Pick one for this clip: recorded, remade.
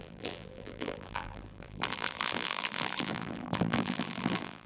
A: remade